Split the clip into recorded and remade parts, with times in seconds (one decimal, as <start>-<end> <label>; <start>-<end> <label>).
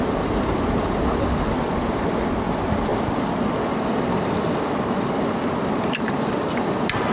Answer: 0.0-7.1 recorded